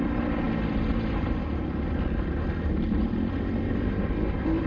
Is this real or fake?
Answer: real